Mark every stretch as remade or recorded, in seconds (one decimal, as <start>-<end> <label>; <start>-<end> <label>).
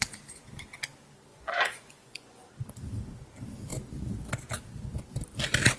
0.0-1.3 recorded; 1.3-2.5 remade; 2.5-5.8 recorded